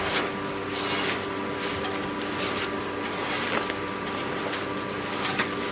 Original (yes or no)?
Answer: yes